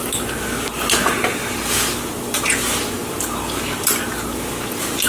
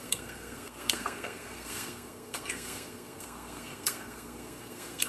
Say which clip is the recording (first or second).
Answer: first